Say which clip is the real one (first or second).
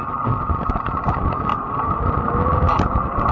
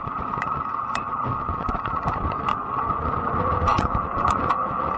first